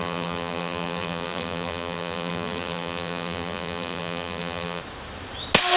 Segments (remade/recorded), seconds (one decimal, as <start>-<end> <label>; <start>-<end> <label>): 0.0-4.8 remade; 4.8-5.8 recorded